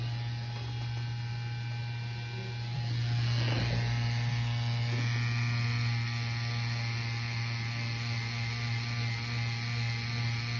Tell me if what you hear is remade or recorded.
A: recorded